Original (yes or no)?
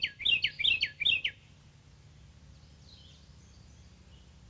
yes